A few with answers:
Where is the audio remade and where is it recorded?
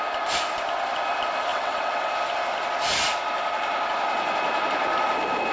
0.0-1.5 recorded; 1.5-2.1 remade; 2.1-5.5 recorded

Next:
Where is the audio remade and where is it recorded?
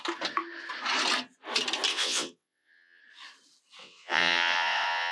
0.0-1.9 recorded; 1.9-3.0 remade; 3.0-3.8 recorded; 3.8-5.1 remade